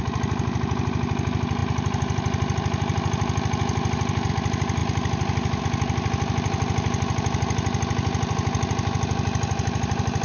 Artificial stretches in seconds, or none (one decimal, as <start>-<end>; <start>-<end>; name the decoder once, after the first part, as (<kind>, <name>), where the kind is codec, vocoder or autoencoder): none